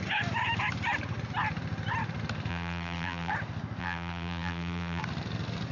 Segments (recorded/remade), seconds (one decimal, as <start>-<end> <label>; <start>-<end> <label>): 0.0-2.5 recorded; 2.5-3.3 remade; 3.3-3.8 recorded; 3.8-5.0 remade; 5.0-5.7 recorded